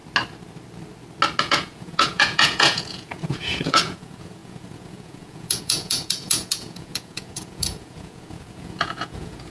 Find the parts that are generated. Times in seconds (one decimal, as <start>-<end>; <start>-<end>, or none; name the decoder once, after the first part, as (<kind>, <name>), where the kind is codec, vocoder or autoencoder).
1.4-9.5 (vocoder, Vocos)